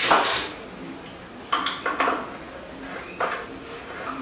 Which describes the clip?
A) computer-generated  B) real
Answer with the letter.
B